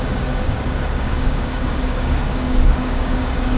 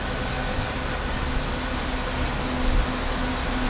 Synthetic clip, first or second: first